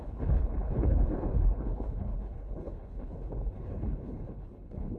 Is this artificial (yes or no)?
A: yes